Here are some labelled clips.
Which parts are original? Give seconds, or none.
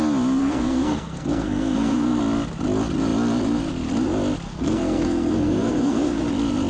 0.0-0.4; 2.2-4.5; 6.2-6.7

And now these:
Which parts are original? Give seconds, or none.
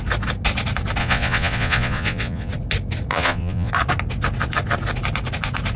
0.0-1.0; 2.5-3.1; 3.7-5.8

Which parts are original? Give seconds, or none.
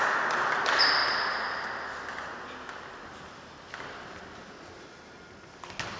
0.0-6.0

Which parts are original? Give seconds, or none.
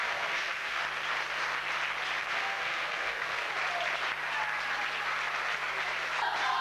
0.8-2.2; 3.5-6.6